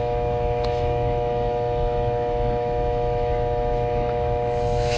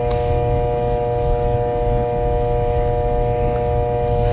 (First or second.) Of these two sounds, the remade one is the first